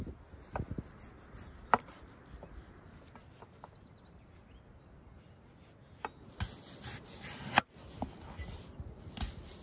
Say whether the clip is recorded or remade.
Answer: recorded